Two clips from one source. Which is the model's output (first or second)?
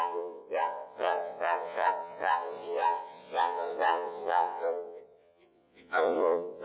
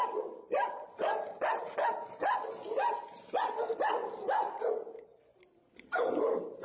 first